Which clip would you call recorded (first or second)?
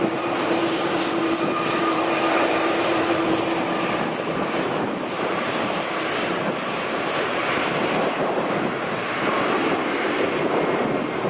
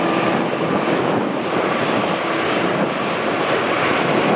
second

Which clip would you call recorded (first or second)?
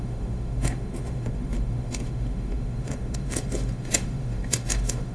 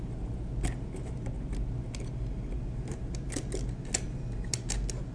second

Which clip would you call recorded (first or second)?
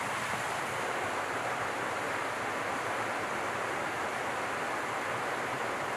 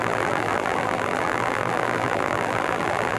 first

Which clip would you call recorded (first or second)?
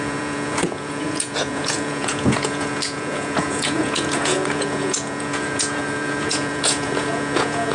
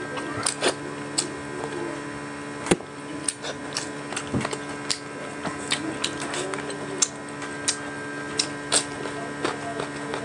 second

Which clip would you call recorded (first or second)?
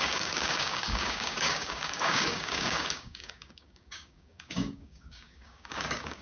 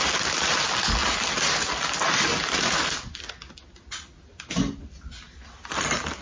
second